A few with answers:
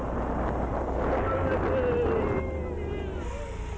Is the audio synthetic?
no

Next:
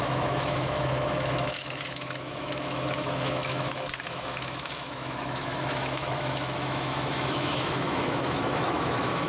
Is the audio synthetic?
yes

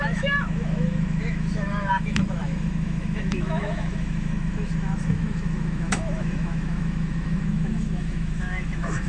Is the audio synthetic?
yes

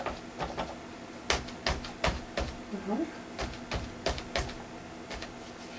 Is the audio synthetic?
no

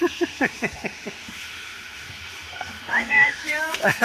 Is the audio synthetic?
yes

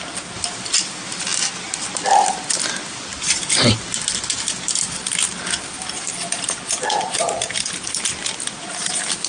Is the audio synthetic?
no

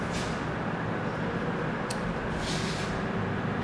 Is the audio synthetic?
no